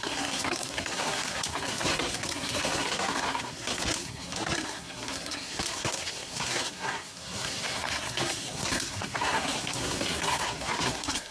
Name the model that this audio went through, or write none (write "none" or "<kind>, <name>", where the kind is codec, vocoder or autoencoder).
codec, SNAC